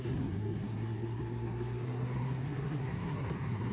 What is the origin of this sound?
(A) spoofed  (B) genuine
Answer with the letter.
A